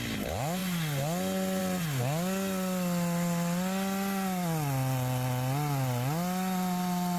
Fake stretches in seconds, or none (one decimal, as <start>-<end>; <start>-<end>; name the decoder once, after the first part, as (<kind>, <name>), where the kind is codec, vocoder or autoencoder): none